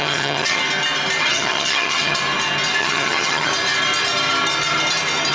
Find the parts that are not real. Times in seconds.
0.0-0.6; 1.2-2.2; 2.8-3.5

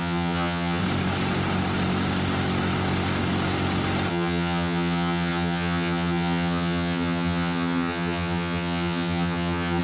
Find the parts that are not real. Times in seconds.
0.0-0.8; 4.1-9.8

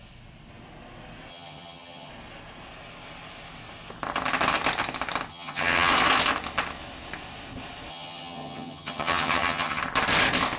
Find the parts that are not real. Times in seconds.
1.3-2.1; 5.3-5.9; 7.9-9.8

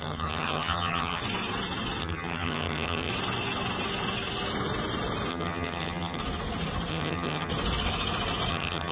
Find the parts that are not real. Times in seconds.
0.0-1.2; 2.0-3.1; 5.3-6.2; 6.9-7.5; 8.5-8.9

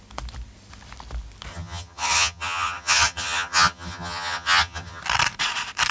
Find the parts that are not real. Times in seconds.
1.5-5.0

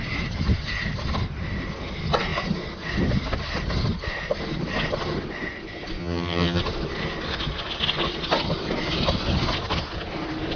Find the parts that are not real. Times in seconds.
6.0-6.6